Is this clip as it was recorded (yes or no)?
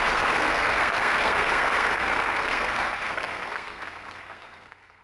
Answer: no